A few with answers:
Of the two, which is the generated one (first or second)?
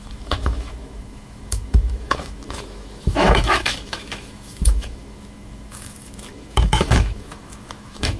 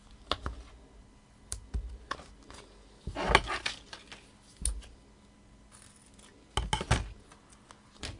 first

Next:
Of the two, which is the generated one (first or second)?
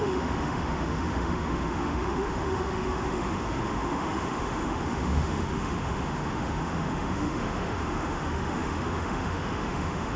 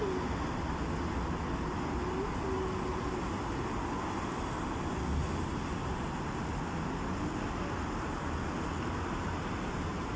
first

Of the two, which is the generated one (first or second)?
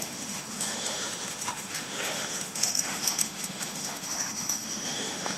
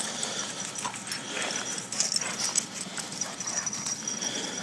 first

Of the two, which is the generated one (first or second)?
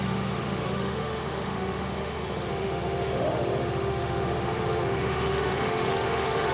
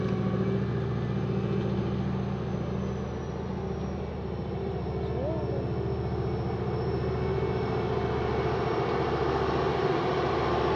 first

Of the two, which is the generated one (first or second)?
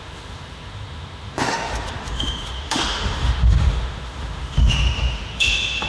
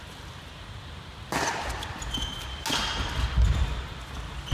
first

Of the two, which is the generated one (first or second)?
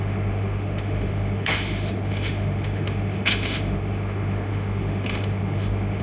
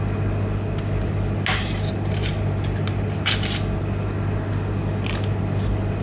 first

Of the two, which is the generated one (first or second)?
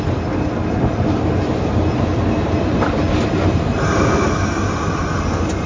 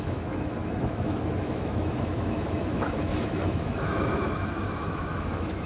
second